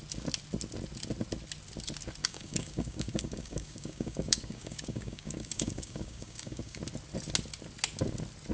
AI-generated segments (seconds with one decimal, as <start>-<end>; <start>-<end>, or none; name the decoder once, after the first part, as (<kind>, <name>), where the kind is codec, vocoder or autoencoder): 2.2-6.8 (codec, DAC)